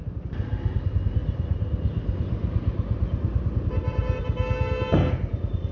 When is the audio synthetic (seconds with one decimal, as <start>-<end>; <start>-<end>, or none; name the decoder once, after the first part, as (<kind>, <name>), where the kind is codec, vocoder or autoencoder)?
none